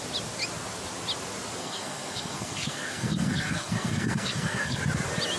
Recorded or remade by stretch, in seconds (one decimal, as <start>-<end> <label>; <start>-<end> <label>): 0.0-1.6 recorded; 1.6-4.8 remade; 4.8-5.4 recorded